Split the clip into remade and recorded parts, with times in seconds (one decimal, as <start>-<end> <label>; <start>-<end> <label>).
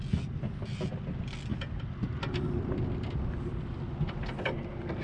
0.0-5.0 recorded